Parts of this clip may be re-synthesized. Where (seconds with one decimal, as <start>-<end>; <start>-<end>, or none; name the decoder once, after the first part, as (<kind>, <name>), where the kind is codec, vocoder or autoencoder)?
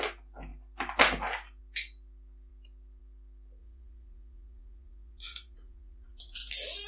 3.6-6.4 (vocoder, Vocos)